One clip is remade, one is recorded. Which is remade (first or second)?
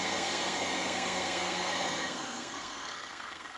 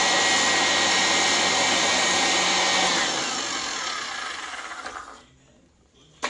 first